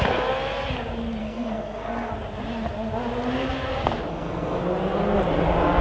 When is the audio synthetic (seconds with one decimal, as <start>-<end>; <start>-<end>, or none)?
1.2-2.1; 4.1-4.6